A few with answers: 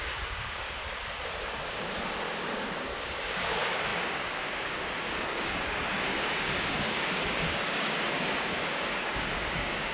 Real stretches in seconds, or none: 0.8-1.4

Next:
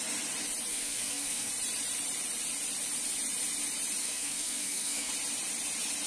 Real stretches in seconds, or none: 0.0-0.7; 1.5-4.0; 5.1-6.1